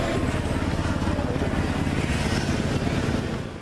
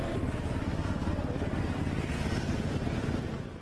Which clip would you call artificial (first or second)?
second